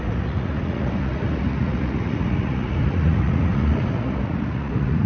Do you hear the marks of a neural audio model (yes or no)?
yes